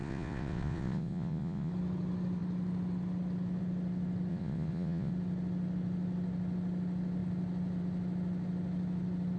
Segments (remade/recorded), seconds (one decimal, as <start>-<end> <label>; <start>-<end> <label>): 0.0-1.7 remade; 1.7-4.3 recorded; 4.3-5.1 remade; 5.1-9.4 recorded